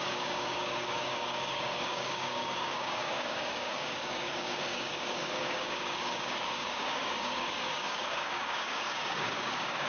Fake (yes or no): yes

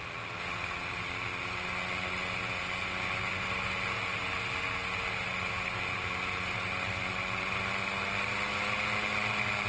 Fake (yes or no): no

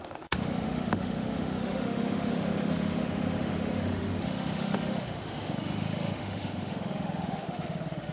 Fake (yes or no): yes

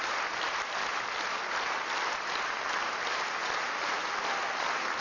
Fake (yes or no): no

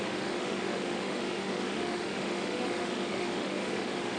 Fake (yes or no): yes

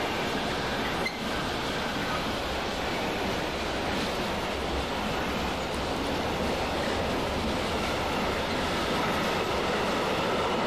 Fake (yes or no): no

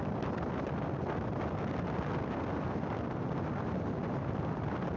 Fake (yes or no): no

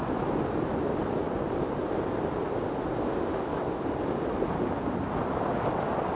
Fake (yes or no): no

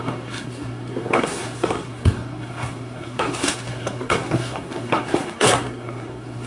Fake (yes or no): yes